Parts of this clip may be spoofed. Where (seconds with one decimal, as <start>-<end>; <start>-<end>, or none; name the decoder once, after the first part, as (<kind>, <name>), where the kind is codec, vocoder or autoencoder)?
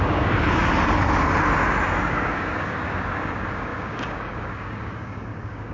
0.0-0.7 (codec, DAC); 2.1-5.7